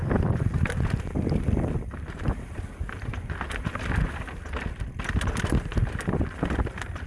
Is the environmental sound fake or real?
real